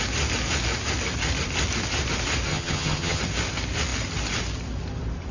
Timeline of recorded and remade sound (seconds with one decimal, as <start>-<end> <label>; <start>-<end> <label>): 0.0-2.5 recorded; 2.5-3.2 remade; 3.2-5.3 recorded